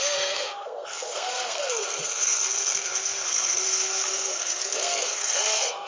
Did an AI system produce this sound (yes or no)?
yes